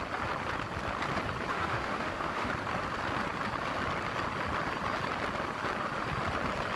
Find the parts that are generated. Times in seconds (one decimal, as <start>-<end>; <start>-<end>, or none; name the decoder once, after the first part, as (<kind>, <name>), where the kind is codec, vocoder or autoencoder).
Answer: 1.5-2.5 (autoencoder, DAC-VAE)

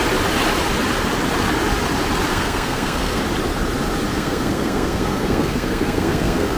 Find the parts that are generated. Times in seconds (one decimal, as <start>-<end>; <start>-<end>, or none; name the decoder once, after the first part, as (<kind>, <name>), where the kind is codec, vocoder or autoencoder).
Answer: 2.3-3.2 (codec, SNAC); 4.1-6.6

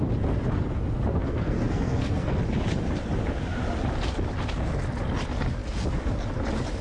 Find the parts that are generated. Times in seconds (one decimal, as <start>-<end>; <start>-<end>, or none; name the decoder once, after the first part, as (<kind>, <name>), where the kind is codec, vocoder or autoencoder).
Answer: 1.1-2.4 (codec, SNAC)

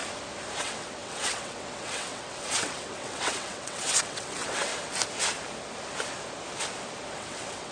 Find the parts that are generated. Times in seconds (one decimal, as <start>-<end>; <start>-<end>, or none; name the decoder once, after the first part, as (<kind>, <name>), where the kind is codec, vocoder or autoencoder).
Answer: 0.6-4.7 (vocoder, WaveNeXt); 7.1-7.7

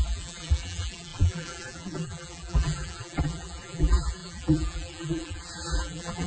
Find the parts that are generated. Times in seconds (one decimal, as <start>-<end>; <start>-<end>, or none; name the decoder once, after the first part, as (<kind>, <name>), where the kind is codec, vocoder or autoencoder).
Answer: 0.0-6.3 (vocoder, BigVGAN v2)

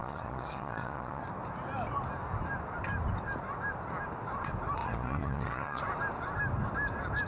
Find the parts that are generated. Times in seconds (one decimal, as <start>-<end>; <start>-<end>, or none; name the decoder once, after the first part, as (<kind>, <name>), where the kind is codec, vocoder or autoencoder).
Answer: 0.0-1.2 (vocoder, Vocos); 4.8-5.8